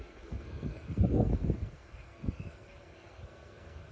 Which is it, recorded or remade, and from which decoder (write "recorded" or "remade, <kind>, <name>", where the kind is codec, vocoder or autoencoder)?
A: remade, codec, SNAC